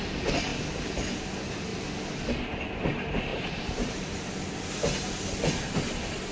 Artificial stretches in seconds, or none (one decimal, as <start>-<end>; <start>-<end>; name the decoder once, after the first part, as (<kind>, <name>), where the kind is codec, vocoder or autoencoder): 3.3-4.3 (vocoder, BigVGAN v2)